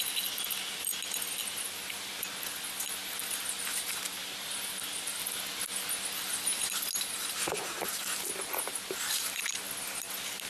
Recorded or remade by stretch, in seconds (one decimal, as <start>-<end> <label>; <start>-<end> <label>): 0.0-10.5 recorded

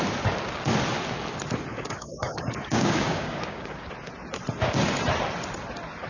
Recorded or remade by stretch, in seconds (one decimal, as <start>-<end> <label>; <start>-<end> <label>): 0.0-1.7 recorded; 1.7-3.9 remade; 3.9-6.1 recorded